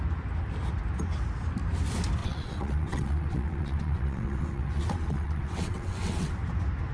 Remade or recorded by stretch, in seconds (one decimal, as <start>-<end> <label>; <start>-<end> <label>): 0.0-2.2 recorded; 2.2-6.3 remade; 6.3-6.9 recorded